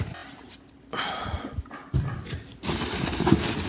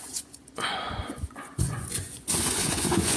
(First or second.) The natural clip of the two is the first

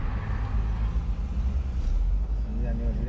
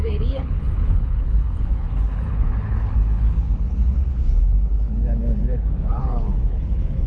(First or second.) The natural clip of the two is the first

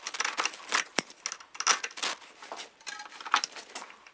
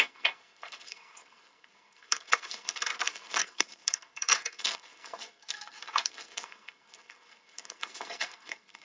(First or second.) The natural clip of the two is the first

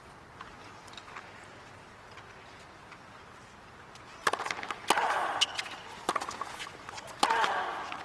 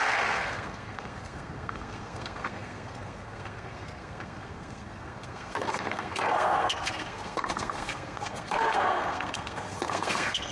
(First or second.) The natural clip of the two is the first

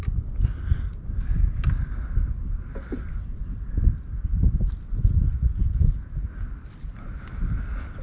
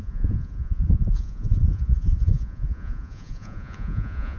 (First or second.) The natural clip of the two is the first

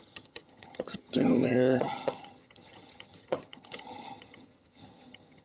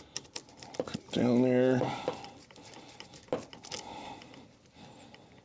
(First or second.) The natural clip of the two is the second